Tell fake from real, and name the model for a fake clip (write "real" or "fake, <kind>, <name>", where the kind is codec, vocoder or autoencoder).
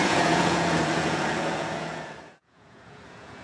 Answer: fake, vocoder, Vocos